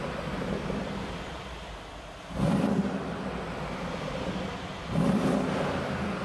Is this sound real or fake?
fake